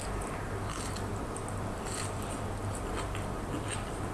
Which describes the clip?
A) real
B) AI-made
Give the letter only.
B